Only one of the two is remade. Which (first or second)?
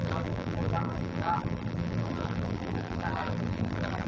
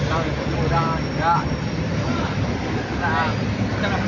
first